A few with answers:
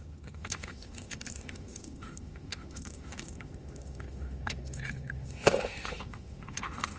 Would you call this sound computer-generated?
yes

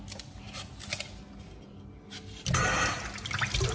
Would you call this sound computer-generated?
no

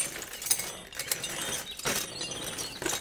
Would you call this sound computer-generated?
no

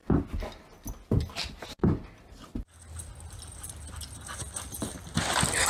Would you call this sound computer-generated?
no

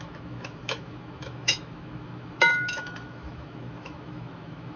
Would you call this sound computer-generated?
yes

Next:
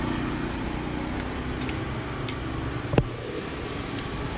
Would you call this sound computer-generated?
no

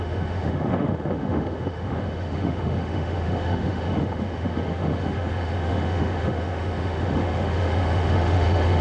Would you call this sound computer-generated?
yes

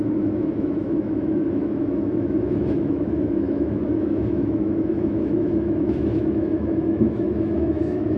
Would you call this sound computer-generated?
yes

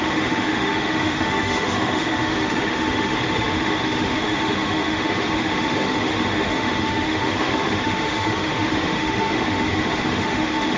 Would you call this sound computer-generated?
yes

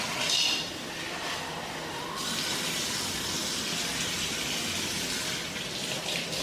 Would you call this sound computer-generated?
no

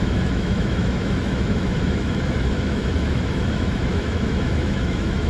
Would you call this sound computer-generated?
yes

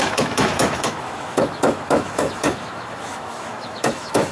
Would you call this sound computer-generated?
yes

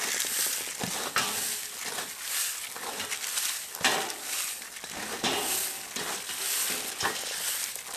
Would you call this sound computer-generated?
no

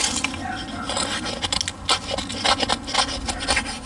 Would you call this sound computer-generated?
no